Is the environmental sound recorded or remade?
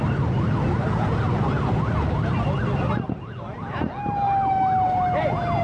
recorded